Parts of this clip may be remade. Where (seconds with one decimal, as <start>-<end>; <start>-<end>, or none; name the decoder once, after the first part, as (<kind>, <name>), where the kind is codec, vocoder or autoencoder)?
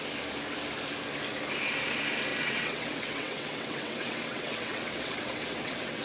2.3-6.0 (vocoder, WaveNeXt)